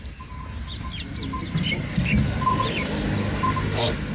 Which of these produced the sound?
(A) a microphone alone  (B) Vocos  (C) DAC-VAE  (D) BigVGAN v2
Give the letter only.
A